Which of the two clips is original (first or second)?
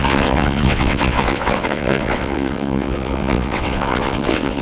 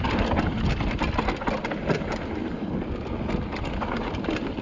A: second